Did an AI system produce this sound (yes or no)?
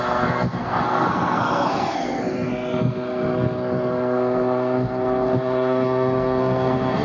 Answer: yes